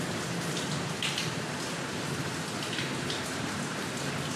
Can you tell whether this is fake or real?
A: real